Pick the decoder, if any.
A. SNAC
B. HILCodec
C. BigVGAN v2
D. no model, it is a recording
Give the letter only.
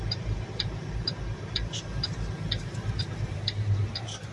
C